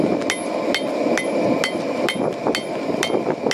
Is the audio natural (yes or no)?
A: yes